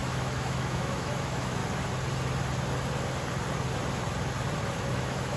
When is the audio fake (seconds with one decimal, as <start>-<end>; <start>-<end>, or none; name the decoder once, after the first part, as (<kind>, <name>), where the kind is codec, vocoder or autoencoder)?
0.0-1.6 (autoencoder, DAC-VAE); 4.8-5.4